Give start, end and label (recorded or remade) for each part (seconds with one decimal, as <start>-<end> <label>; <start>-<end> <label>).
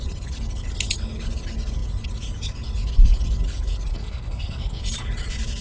0.0-3.9 recorded; 3.9-4.8 remade; 4.8-5.6 recorded